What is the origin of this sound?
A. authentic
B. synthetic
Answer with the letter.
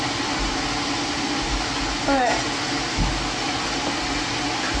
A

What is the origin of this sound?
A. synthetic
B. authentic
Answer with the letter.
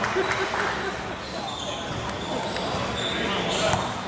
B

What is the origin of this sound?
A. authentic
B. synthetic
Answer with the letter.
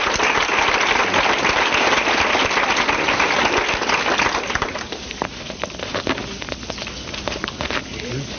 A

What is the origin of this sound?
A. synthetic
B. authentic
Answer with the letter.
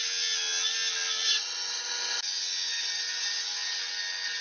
B